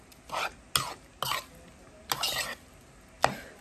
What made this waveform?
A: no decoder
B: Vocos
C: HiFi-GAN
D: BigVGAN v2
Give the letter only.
A